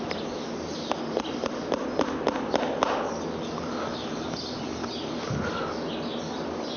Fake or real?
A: real